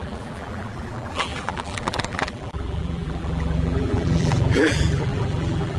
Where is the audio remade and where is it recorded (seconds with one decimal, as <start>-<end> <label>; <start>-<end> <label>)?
0.0-5.8 remade